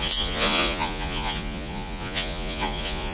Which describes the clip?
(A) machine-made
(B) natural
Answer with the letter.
A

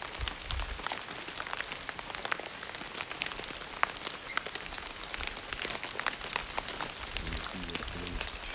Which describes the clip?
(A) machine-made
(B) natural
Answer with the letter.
B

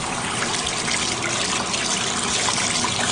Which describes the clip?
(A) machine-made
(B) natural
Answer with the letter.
B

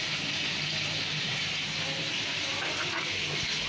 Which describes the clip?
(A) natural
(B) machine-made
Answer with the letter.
A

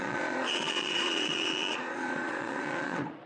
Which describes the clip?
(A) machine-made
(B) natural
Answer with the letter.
A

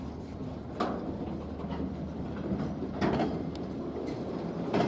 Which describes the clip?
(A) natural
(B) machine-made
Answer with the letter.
A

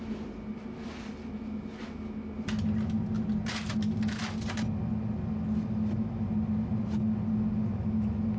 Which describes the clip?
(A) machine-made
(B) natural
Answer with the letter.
B